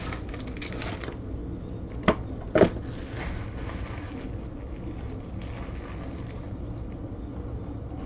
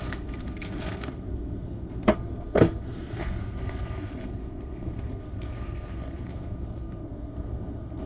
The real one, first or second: first